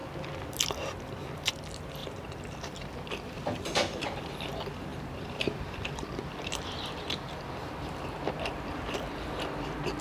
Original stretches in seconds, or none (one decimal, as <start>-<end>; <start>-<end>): 0.0-2.0; 4.2-4.9; 8.8-10.0